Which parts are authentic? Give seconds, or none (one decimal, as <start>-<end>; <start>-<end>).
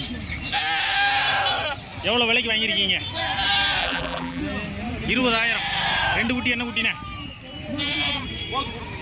0.0-3.8; 4.4-9.0